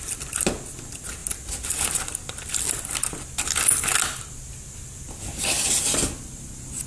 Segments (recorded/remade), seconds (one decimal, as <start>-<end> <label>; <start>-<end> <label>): 0.0-6.9 recorded